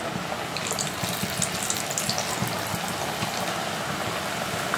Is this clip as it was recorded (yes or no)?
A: yes